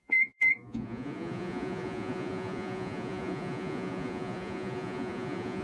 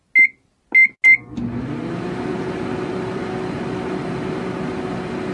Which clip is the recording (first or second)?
second